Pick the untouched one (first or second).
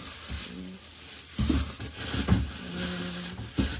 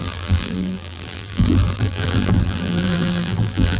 first